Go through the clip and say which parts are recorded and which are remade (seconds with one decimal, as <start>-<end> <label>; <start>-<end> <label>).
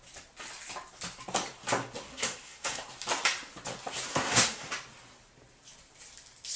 0.0-2.1 recorded; 2.1-2.9 remade; 2.9-4.1 recorded; 4.1-4.7 remade; 4.7-6.6 recorded